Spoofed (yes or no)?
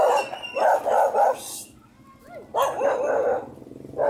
no